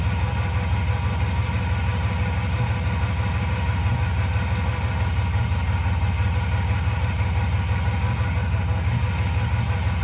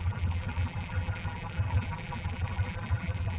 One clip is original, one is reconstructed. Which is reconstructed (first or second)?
second